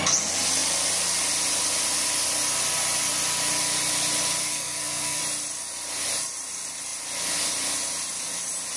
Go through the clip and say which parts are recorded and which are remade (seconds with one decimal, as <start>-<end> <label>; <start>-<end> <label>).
0.0-4.4 recorded; 4.4-5.2 remade; 5.2-8.8 recorded